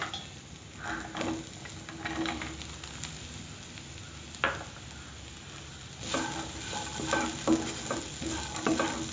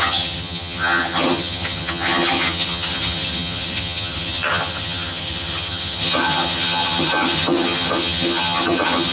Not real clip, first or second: second